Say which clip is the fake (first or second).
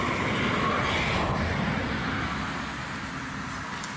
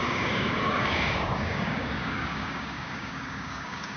second